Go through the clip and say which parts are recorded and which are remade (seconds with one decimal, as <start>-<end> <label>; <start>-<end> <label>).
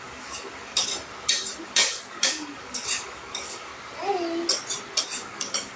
0.0-0.9 remade; 0.9-1.6 recorded; 1.6-3.7 remade; 3.7-5.0 recorded; 5.0-5.8 remade